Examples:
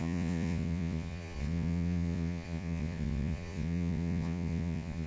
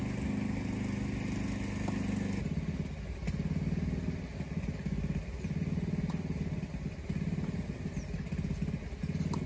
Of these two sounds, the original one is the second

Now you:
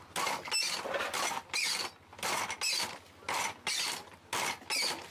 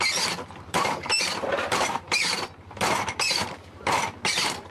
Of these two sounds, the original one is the first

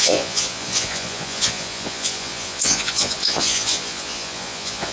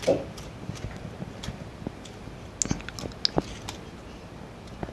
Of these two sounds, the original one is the second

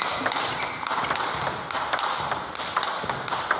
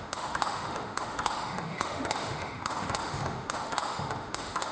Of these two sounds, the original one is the first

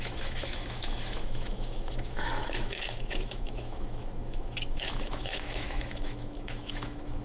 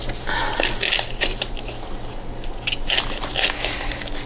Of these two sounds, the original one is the second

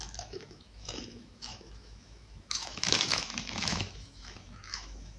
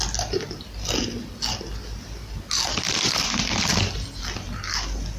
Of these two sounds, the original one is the second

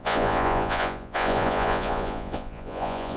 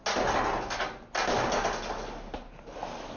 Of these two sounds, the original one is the second